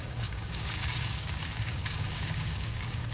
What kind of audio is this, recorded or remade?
remade